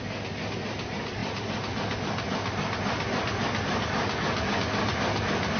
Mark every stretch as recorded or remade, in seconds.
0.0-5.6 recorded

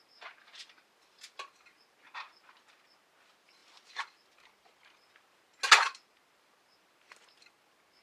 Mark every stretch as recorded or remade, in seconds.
0.0-8.0 recorded

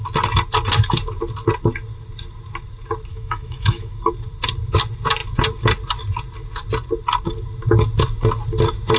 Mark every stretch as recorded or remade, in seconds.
0.0-3.1 recorded; 3.1-4.0 remade; 4.0-9.0 recorded

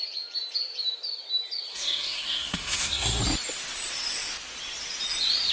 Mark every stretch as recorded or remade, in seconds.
0.0-1.7 recorded; 1.7-3.2 remade; 3.2-5.5 recorded

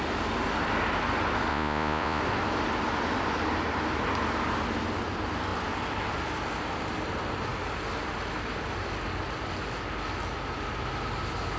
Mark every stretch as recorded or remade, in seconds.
0.0-1.5 recorded; 1.5-2.2 remade; 2.2-11.6 recorded